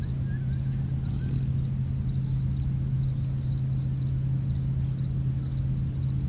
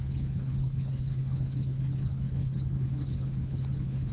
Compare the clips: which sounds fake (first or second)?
second